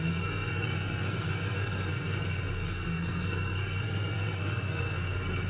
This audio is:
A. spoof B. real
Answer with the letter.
A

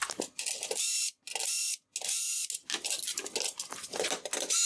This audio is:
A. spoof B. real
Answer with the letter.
B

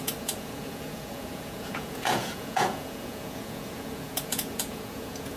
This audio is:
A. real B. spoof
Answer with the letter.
B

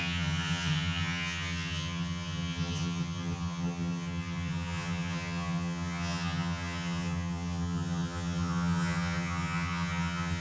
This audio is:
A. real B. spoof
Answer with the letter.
B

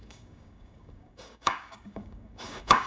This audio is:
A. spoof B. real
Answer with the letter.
A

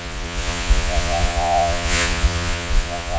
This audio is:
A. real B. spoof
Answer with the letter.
B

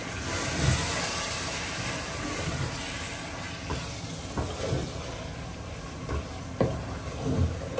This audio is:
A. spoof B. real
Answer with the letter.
B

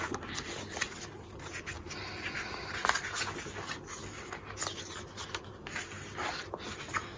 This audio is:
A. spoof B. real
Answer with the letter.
B